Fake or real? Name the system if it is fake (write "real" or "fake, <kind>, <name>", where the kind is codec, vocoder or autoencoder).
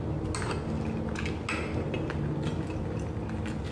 real